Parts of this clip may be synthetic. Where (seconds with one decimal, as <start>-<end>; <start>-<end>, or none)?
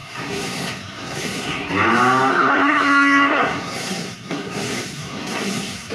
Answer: 0.0-1.7; 2.3-5.9